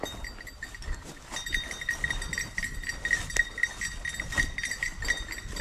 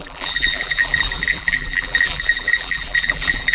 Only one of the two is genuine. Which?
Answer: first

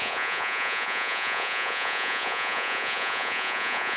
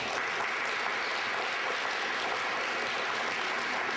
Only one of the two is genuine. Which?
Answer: second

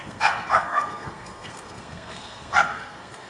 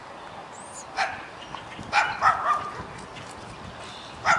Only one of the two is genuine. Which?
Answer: second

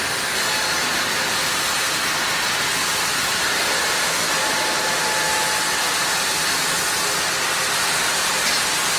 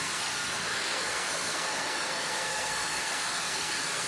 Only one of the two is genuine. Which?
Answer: first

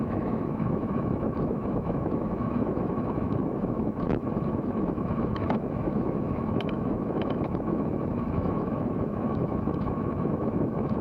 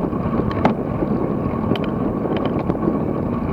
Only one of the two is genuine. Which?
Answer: second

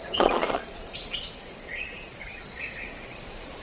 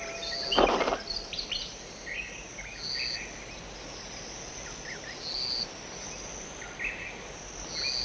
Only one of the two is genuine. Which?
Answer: second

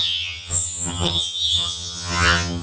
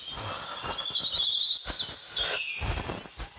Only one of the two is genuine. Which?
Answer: second